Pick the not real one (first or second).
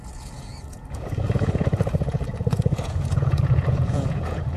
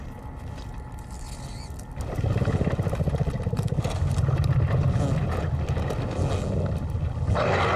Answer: first